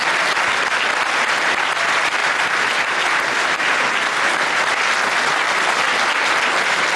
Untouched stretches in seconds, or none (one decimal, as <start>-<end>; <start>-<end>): 0.0-2.2; 4.6-7.0